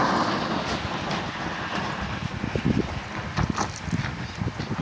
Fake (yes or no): no